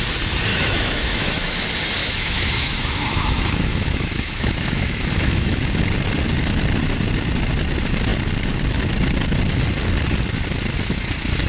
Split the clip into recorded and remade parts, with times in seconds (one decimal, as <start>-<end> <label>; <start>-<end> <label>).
0.0-0.5 recorded; 0.5-1.5 remade; 1.5-2.0 recorded; 2.0-5.6 remade; 5.6-11.5 recorded

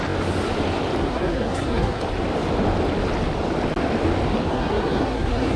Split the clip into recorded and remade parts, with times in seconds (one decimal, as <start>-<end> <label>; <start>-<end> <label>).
0.0-1.0 recorded; 1.0-2.0 remade; 2.0-4.5 recorded; 4.5-5.6 remade